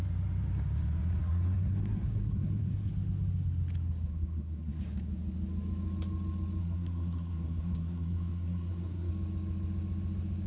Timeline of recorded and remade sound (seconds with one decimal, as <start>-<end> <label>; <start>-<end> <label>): 0.0-1.2 recorded; 1.2-2.9 remade; 2.9-4.1 recorded; 4.1-4.8 remade; 4.8-6.6 recorded; 6.6-9.1 remade; 9.1-10.5 recorded